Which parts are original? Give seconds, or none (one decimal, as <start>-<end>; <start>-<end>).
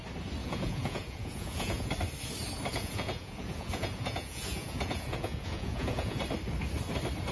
0.0-0.4; 1.9-2.7; 6.2-7.3